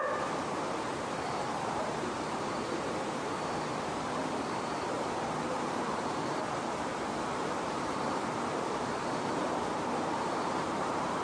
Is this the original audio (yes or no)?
no